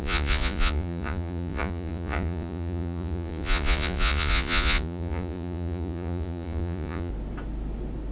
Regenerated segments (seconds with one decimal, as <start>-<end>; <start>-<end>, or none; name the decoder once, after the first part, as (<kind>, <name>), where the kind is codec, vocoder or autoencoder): 0.0-7.1 (vocoder, Vocos)